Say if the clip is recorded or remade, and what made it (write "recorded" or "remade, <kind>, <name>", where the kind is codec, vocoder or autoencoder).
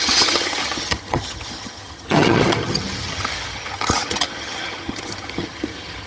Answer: remade, vocoder, HiFi-GAN